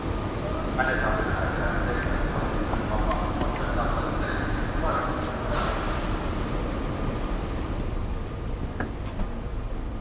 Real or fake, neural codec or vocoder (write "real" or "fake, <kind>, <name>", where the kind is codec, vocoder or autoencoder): real